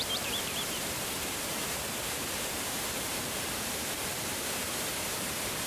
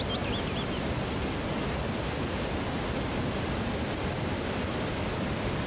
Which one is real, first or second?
second